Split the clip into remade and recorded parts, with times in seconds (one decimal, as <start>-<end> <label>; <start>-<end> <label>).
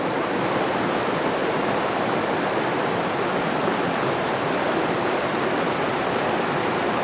0.0-7.0 recorded